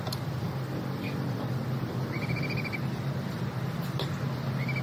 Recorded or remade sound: recorded